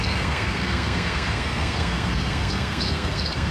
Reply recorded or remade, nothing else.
remade